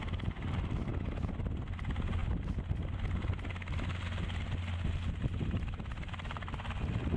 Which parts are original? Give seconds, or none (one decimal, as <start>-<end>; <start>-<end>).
0.0-5.2; 6.1-7.2